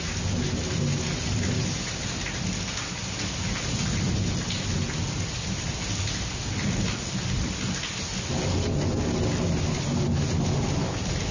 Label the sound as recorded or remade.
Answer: recorded